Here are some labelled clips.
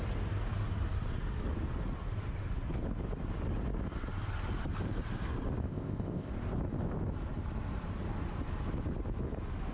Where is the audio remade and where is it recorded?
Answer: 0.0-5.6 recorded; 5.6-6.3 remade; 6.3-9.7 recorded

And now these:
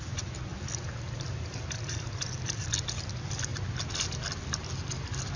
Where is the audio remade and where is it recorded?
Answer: 0.0-5.4 recorded